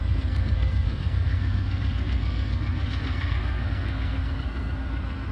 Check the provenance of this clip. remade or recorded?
remade